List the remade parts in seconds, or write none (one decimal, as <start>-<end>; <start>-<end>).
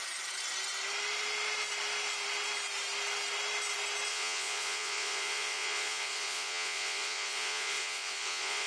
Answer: 4.1-8.7